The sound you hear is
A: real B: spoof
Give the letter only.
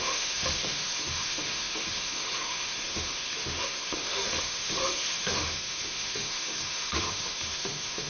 B